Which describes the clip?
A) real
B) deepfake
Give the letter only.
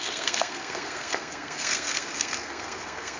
B